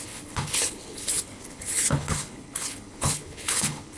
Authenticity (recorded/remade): remade